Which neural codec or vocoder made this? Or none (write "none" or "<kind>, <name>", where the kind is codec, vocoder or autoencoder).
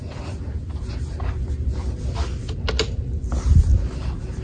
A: none